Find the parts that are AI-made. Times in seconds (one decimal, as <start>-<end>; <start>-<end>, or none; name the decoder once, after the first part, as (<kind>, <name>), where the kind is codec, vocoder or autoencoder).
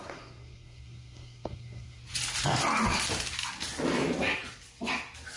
0.0-2.0 (codec, SNAC)